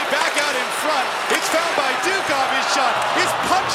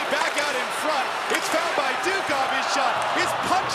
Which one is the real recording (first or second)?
first